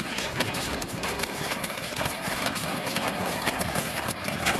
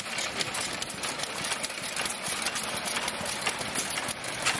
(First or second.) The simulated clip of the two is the first